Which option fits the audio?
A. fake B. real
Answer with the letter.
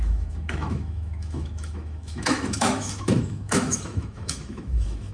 A